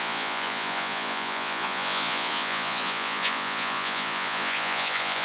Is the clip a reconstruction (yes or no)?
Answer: yes